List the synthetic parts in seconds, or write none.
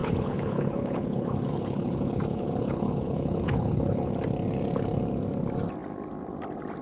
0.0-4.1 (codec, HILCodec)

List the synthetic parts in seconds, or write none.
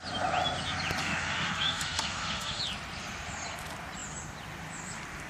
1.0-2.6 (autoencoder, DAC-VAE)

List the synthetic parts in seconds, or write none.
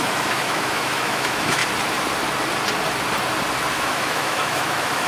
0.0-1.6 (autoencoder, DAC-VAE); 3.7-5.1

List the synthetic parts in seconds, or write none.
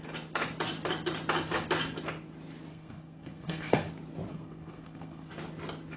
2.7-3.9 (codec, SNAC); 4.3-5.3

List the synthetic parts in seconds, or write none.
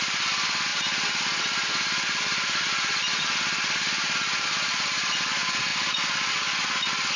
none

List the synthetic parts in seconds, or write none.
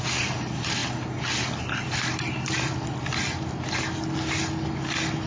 none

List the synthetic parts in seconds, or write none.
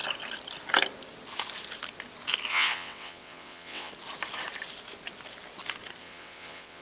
2.5-3.9 (vocoder, WaveNeXt); 6.0-6.8